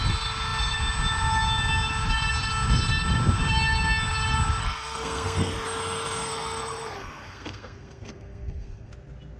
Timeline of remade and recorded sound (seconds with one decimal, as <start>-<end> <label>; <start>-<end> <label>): 0.0-4.6 recorded; 4.6-5.5 remade; 5.5-6.3 recorded; 6.3-8.9 remade; 8.9-9.4 recorded